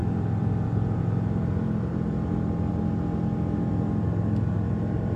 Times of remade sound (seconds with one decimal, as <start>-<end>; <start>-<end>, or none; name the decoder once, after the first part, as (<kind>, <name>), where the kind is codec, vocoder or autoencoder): 0.0-2.7 (vocoder, BigVGAN v2)